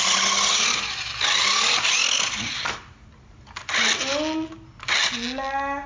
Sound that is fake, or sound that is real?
real